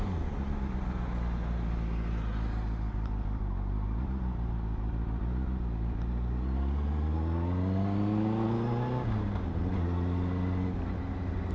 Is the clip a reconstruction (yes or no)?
no